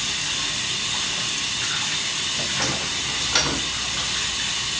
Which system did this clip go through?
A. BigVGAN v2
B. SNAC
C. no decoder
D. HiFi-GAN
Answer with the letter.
C